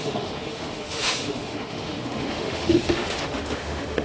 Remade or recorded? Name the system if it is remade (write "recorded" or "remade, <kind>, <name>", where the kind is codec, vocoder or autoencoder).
remade, autoencoder, DAC-VAE